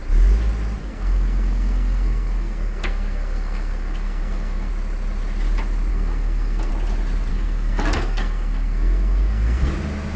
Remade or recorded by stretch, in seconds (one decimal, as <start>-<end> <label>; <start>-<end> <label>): 0.0-0.8 recorded; 0.8-4.7 remade; 4.7-5.9 recorded; 5.9-6.7 remade; 6.7-7.3 recorded; 7.3-9.7 remade; 9.7-10.2 recorded